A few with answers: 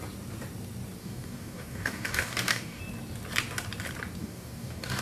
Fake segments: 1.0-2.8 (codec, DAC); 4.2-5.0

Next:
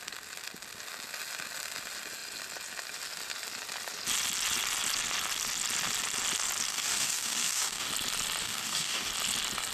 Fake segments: 6.7-7.9 (codec, DAC); 8.4-9.1

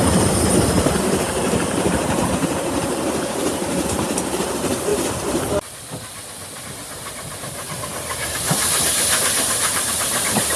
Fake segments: 0.0-4.9 (vocoder, BigVGAN v2); 6.6-10.6

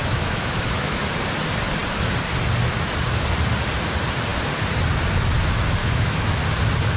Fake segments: 0.0-1.0 (autoencoder, DAC-VAE); 5.8-6.4

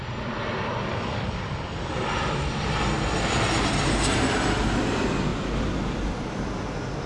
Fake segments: 0.9-2.1 (codec, DAC)

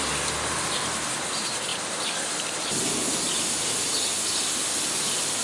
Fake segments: none

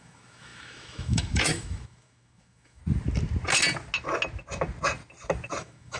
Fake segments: 0.0-2.8 (autoencoder, DAC-VAE); 5.6-6.0

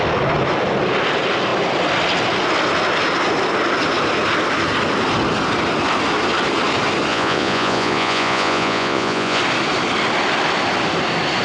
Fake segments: 7.1-9.4 (vocoder, Vocos)